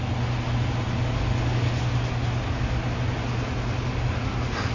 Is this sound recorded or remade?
recorded